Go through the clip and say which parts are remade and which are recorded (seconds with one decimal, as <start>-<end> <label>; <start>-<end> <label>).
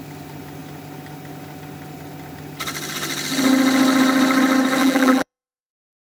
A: 0.0-4.8 recorded; 4.8-6.0 remade